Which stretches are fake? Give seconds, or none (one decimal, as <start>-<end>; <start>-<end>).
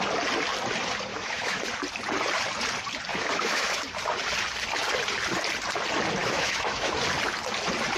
1.1-1.6; 3.1-3.8; 6.2-6.9